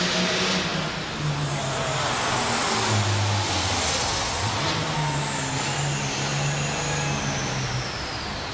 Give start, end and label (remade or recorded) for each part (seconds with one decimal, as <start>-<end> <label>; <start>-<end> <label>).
0.0-8.5 recorded